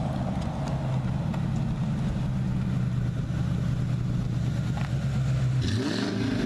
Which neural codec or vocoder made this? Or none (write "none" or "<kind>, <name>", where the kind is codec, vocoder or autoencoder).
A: none